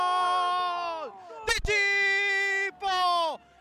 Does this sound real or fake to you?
real